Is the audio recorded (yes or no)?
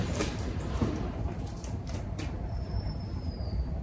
no